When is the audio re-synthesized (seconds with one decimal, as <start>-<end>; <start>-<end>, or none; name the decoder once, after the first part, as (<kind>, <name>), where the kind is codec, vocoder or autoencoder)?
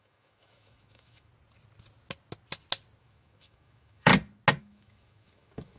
0.0-1.3 (autoencoder, DAC-VAE); 3.0-4.1; 4.6-5.8